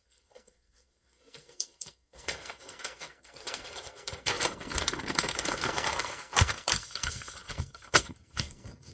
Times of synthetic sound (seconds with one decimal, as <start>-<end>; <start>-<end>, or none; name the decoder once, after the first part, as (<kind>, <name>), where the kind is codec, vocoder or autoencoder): 0.0-8.9 (codec, SNAC)